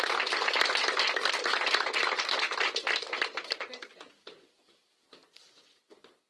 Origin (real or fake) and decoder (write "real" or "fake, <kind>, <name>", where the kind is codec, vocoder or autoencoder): real